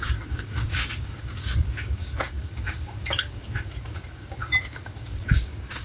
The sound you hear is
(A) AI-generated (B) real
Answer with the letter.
A